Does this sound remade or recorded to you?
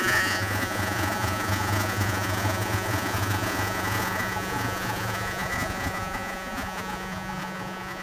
remade